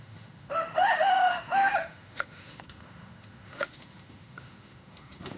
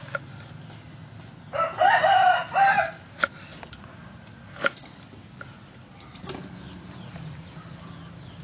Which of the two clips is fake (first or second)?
first